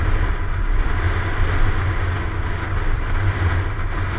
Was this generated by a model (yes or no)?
no